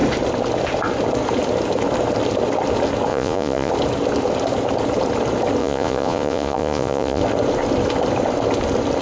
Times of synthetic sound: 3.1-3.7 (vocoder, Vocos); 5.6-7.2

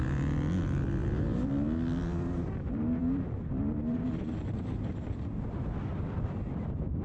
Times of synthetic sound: 1.0-1.5 (vocoder, BigVGAN v2); 3.0-4.3

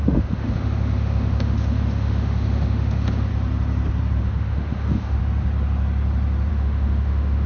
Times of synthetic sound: 0.0-3.3 (autoencoder, DAC-VAE); 4.2-5.2; 6.5-7.5

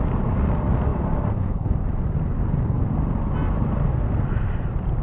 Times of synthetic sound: 0.9-3.9 (vocoder, BigVGAN v2)

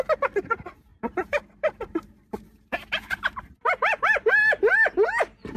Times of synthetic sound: 0.9-4.3 (vocoder, BigVGAN v2)

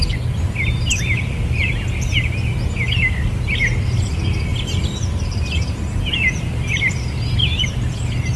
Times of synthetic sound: none